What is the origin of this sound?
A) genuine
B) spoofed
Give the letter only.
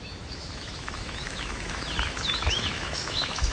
B